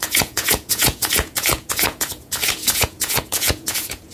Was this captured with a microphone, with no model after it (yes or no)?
no